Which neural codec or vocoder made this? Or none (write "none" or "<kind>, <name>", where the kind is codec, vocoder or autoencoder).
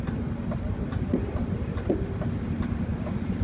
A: vocoder, BigVGAN v2